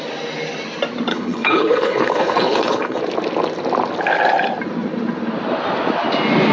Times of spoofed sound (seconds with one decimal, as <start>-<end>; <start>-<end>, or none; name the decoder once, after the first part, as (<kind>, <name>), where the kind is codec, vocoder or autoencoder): 1.1-3.0 (codec, HILCodec)